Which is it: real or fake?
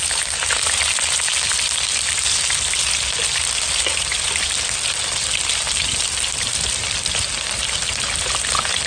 real